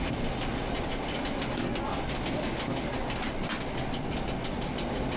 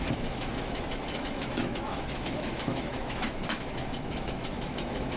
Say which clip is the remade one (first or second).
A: second